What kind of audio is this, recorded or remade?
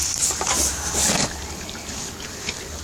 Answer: recorded